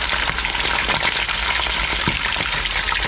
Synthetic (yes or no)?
no